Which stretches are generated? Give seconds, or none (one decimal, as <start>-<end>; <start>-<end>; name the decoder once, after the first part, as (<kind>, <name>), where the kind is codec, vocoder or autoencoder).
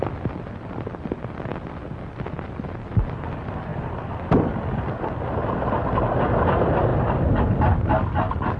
none